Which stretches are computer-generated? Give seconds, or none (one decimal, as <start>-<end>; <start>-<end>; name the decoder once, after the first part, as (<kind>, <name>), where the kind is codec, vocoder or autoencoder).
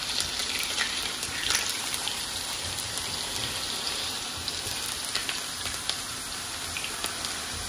0.4-2.9 (vocoder, BigVGAN v2); 5.2-5.8